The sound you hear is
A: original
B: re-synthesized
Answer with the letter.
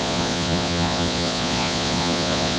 B